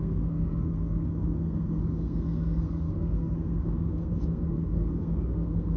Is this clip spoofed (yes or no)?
yes